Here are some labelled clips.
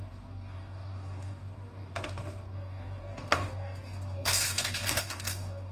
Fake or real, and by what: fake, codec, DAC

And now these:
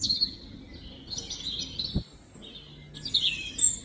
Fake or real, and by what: real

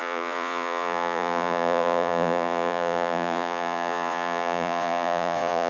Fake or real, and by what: fake, vocoder, Vocos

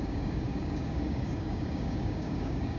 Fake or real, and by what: fake, codec, DAC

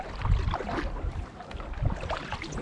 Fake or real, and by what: real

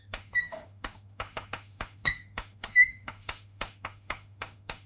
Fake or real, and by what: fake, autoencoder, DAC-VAE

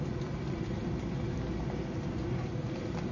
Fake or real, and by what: real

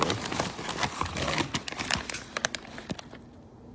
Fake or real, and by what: real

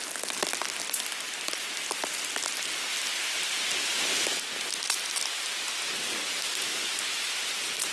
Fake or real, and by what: real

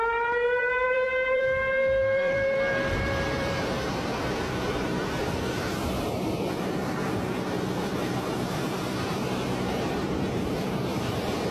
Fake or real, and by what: fake, vocoder, BigVGAN v2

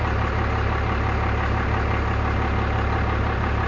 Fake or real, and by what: fake, vocoder, BigVGAN v2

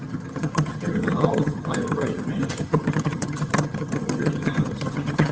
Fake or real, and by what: fake, vocoder, HiFi-GAN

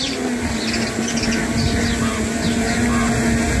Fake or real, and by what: real